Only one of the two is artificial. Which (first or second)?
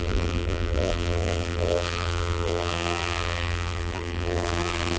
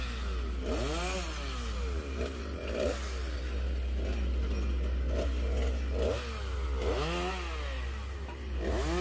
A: first